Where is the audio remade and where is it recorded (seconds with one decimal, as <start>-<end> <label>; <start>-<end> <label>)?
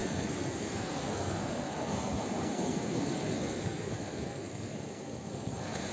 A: 0.0-5.9 remade